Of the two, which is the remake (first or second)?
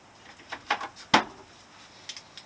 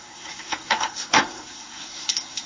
second